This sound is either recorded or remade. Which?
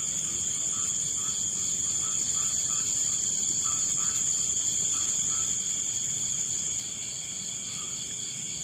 remade